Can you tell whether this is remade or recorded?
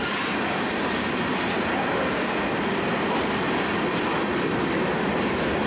recorded